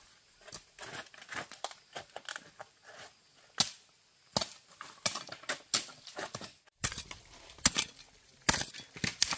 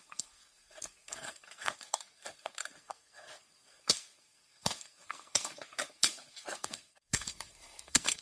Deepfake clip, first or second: second